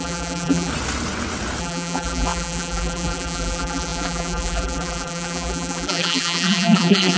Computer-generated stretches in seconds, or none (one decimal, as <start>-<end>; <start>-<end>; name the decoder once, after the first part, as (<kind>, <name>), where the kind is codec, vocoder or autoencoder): 0.0-0.7 (vocoder, BigVGAN v2); 1.6-7.2